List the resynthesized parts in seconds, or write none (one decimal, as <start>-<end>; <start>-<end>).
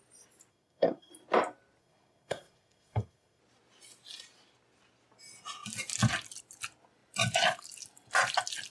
0.5-1.1; 1.8-3.4